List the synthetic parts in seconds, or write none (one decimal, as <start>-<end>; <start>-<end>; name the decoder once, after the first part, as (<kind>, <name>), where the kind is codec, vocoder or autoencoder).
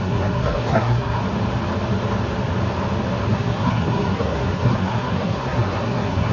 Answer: 0.0-1.2 (codec, SNAC); 3.3-6.3